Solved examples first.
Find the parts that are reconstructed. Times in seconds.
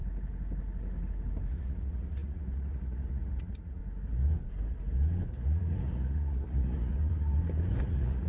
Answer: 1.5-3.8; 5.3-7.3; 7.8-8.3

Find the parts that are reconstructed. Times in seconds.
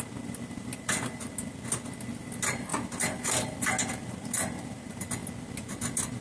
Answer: none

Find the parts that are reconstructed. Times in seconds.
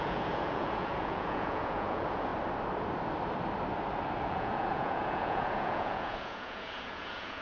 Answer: 0.0-2.3; 4.2-7.4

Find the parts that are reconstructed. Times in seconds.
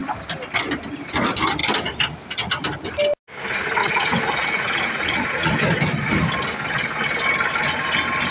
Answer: 3.8-5.6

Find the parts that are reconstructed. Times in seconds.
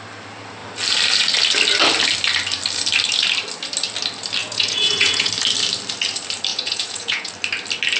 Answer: 4.4-5.3; 6.5-7.3